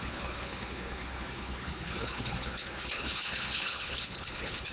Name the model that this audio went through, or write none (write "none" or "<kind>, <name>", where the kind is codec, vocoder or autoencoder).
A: codec, HILCodec